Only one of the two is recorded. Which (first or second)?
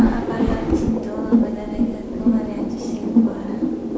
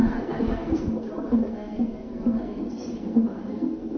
first